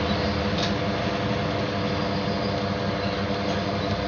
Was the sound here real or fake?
real